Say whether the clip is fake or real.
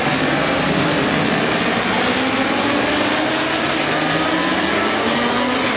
real